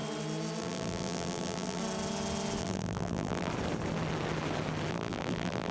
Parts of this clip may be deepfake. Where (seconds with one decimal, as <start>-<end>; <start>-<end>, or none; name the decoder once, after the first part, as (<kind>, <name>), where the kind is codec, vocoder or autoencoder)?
0.6-1.8 (vocoder, BigVGAN v2); 2.6-3.5; 4.9-5.7